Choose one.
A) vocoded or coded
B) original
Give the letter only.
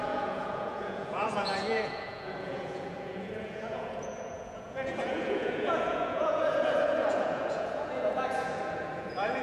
A